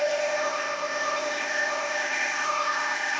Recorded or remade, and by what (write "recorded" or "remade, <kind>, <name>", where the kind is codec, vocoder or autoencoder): remade, codec, ZipCodec